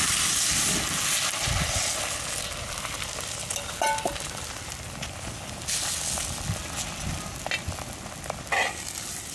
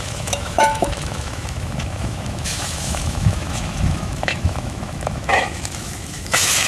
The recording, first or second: first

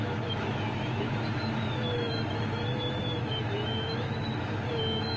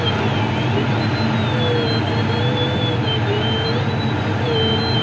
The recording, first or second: second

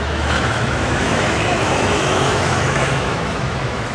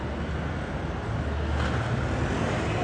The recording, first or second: second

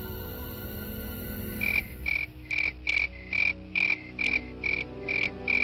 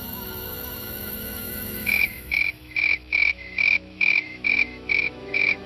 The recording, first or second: first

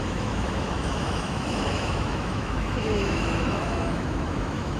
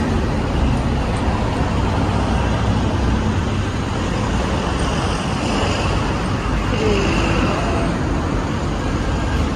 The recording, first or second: second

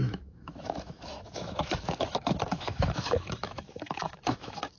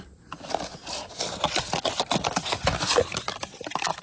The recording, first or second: second